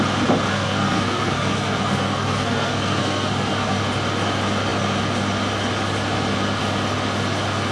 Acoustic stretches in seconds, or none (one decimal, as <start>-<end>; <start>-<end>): 0.0-0.5; 3.8-7.7